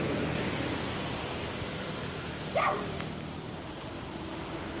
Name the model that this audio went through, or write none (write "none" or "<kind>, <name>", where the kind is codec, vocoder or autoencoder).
none